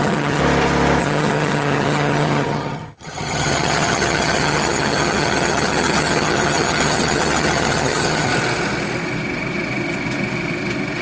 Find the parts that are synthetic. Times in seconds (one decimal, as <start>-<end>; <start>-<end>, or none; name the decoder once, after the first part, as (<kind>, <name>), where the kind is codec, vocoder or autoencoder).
0.0-0.4 (vocoder, HiFi-GAN); 1.0-8.3